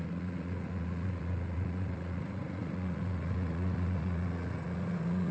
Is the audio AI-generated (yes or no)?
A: yes